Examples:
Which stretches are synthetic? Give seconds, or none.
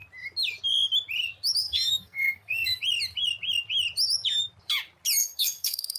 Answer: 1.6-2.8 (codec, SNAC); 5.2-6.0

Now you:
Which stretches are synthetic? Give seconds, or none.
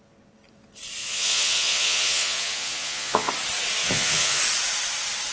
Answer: 1.0-3.3 (vocoder, Vocos); 3.8-4.4